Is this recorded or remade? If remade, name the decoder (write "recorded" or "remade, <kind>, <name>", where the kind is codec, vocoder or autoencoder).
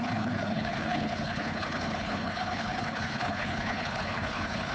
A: remade, codec, HILCodec